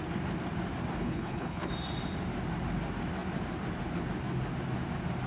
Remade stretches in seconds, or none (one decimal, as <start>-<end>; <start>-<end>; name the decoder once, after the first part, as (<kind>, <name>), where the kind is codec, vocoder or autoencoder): 1.0-1.7 (codec, HILCodec)